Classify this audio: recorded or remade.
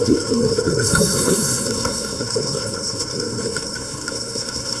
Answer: remade